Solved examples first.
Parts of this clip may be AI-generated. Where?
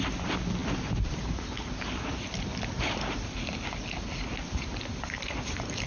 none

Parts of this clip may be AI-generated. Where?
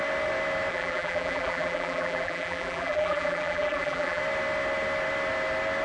0.7-4.2 (vocoder, BigVGAN v2)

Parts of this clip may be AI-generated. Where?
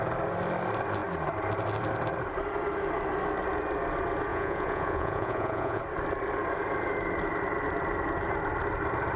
4.3-5.8 (vocoder, Vocos)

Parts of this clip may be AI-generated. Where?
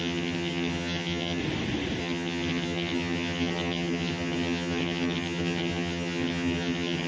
0.0-1.4 (vocoder, HiFi-GAN); 2.0-7.1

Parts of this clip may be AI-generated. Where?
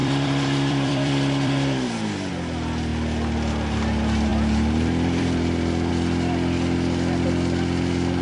0.0-2.3 (vocoder, BigVGAN v2); 4.3-5.9